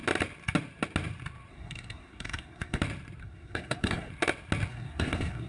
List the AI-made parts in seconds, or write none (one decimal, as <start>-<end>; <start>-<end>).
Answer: 1.5-2.8; 3.2-4.1; 4.7-5.5